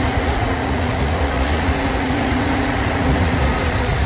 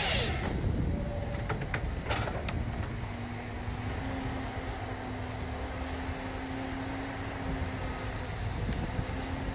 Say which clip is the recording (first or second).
second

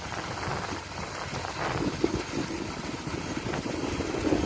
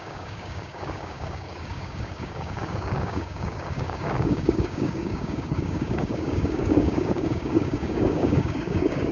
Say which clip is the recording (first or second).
first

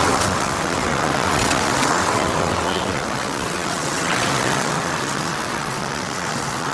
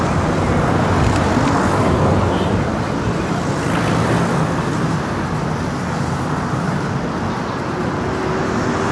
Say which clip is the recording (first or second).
second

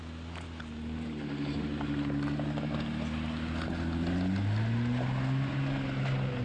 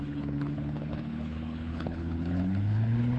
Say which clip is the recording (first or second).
first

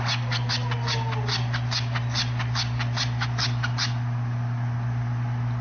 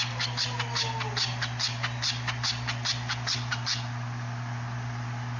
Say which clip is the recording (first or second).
first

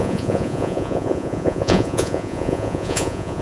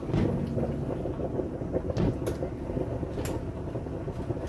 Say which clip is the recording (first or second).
second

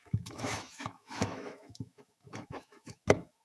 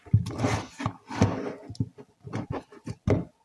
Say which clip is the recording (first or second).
second